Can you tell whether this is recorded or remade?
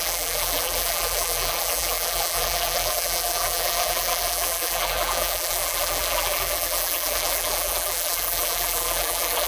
remade